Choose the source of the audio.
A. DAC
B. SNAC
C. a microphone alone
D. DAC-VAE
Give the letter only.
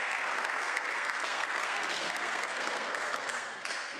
B